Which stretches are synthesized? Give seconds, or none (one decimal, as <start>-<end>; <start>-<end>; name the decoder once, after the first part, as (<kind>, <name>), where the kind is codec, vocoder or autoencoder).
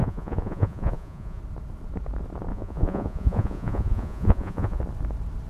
0.0-1.4 (vocoder, Vocos); 2.5-4.8